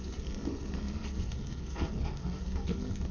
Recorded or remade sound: remade